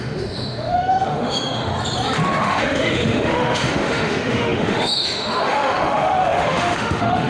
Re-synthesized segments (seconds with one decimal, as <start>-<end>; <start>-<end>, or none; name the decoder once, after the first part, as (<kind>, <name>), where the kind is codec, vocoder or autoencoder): 0.0-1.7 (autoencoder, DAC-VAE); 2.4-7.3